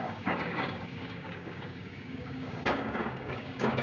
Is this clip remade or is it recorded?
remade